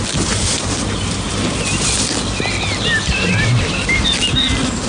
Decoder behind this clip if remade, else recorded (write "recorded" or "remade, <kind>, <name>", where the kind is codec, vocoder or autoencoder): recorded